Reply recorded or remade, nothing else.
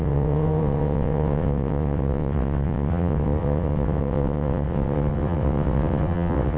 remade